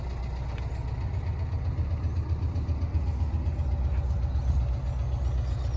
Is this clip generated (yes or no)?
no